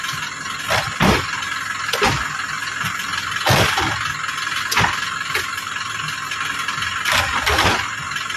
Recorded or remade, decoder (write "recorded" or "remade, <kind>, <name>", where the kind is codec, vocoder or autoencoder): recorded